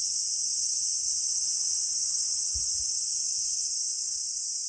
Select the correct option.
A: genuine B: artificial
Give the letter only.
B